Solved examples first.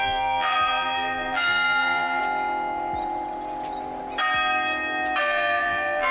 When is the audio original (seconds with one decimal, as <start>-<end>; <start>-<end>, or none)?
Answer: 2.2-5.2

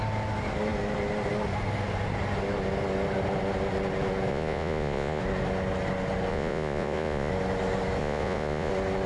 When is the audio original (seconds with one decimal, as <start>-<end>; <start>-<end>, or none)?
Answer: 0.0-4.3; 5.2-6.3; 7.3-8.0; 8.7-9.1

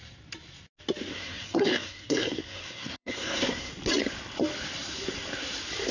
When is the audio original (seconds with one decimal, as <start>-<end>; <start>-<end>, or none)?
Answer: 0.0-1.1; 3.7-5.9

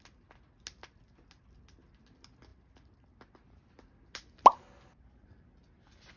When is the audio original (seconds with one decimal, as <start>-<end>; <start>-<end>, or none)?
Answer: 0.0-6.2